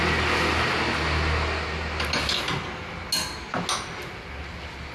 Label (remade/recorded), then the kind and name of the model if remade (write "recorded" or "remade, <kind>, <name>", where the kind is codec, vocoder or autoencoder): recorded